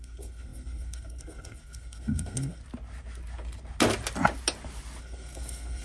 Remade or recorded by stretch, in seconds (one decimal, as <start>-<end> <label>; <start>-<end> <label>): 0.0-2.6 remade; 2.6-5.0 recorded; 5.0-5.8 remade